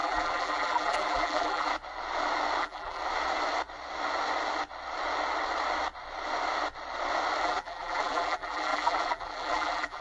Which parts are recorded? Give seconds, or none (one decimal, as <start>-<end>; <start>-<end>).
1.7-2.6; 3.0-7.4